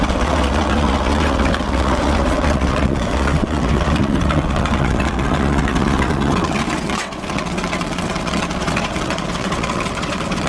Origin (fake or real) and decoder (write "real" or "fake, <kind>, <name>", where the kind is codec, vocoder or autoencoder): fake, vocoder, WaveNeXt